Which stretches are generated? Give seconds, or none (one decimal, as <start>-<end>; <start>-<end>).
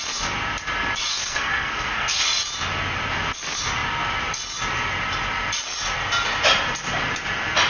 1.1-2.2